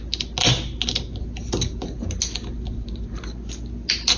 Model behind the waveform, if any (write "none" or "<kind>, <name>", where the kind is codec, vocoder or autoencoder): none